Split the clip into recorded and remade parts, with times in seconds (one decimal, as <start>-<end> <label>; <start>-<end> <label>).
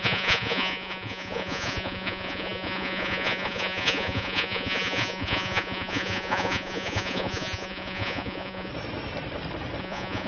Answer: 0.0-8.7 remade; 8.7-9.8 recorded; 9.8-10.3 remade